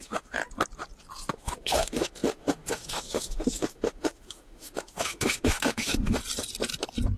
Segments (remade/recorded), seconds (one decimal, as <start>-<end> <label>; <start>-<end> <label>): 0.0-0.4 remade; 0.4-1.3 recorded; 1.3-6.2 remade; 6.2-7.2 recorded